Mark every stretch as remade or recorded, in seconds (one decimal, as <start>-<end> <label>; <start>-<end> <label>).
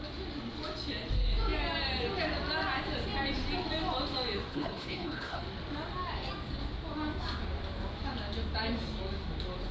0.0-4.5 recorded; 4.5-5.4 remade; 5.4-9.7 recorded